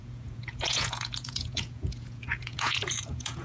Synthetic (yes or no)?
yes